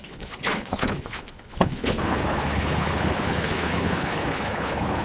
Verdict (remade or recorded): remade